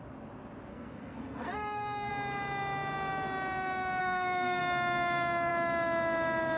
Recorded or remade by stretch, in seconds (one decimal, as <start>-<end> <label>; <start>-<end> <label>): 0.0-0.7 recorded; 0.7-2.1 remade; 2.1-4.0 recorded; 4.0-4.6 remade; 4.6-6.6 recorded